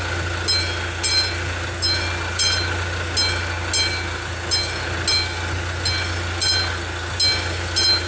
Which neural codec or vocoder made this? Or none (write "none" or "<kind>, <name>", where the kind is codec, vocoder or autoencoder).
none